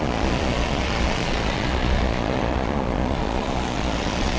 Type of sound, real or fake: fake